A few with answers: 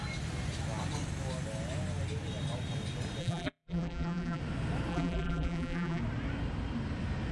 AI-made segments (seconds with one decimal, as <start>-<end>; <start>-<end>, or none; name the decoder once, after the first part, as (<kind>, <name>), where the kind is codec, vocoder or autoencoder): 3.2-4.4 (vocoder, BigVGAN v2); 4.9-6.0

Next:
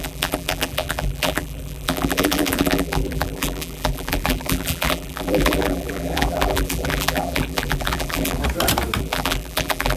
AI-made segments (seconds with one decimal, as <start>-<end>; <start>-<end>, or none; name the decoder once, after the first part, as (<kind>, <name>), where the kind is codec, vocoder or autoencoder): 0.0-8.4 (vocoder, BigVGAN v2); 9.0-10.0

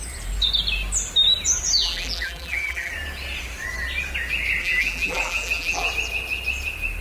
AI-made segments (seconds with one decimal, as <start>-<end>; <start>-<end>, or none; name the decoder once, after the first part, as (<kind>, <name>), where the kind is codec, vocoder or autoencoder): 1.8-2.9 (vocoder, BigVGAN v2); 4.6-5.9

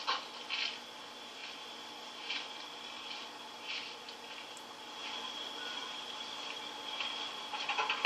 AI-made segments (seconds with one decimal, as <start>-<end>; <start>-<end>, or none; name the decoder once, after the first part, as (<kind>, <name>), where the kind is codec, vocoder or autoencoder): none

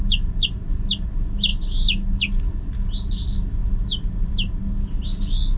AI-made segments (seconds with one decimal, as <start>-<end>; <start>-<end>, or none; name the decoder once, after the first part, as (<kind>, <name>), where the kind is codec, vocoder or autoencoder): none